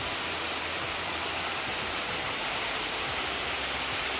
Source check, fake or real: fake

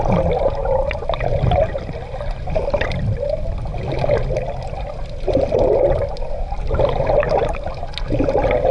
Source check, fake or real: real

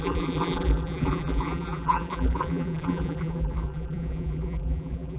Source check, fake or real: fake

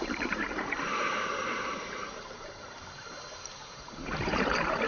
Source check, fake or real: fake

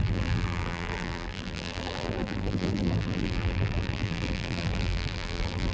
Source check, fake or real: fake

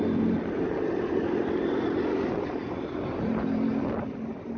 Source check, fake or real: fake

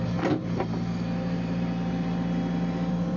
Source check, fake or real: real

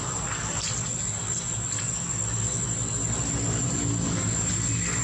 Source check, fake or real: real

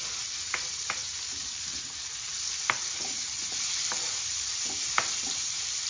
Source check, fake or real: fake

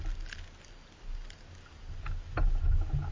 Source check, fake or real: real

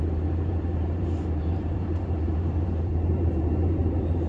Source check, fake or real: fake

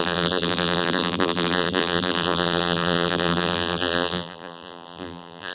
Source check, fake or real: fake